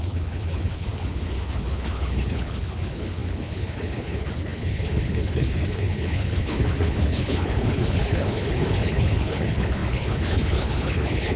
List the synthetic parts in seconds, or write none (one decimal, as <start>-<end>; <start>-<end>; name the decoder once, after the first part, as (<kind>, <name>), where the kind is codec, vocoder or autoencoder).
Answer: 0.0-11.4 (codec, HILCodec)